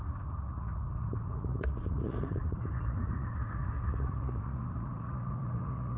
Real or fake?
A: fake